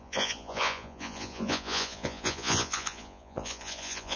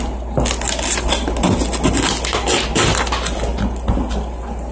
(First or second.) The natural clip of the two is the second